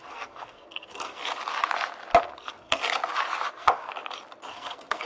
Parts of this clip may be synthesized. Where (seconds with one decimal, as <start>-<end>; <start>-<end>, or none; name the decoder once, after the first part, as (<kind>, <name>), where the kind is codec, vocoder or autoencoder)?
0.0-1.2 (codec, SNAC); 2.2-2.8; 3.5-3.9; 4.5-5.0